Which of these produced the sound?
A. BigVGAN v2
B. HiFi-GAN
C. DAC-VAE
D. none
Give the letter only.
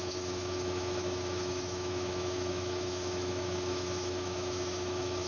C